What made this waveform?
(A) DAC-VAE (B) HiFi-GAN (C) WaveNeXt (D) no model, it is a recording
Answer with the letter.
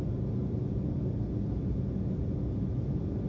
D